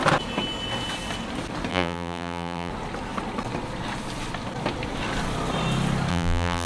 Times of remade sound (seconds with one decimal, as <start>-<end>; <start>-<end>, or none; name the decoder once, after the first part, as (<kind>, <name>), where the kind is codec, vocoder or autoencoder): 1.7-2.7 (vocoder, BigVGAN v2); 6.1-6.7